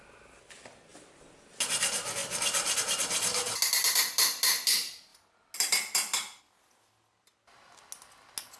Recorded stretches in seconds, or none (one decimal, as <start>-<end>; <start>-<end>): 0.0-8.6